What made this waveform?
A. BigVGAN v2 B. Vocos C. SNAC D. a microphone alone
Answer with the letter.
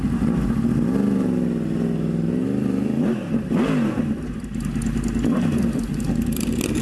D